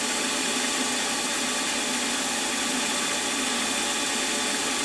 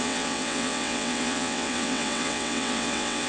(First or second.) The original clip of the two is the first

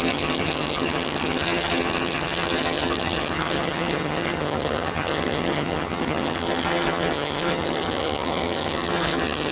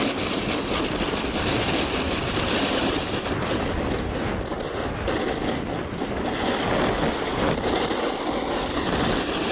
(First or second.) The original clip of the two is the second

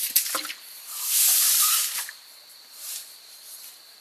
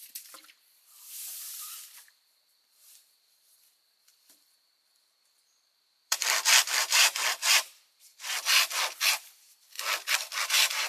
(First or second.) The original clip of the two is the first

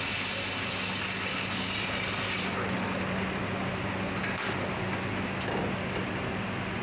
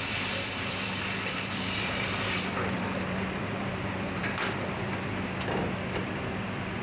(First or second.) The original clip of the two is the first